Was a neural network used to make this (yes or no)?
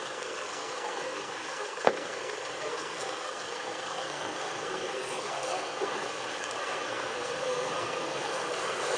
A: yes